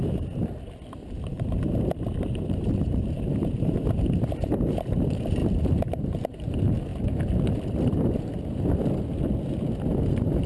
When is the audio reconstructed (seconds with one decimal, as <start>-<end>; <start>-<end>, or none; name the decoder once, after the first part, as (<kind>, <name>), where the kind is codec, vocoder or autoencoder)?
0.0-6.9 (vocoder, BigVGAN v2); 10.1-10.5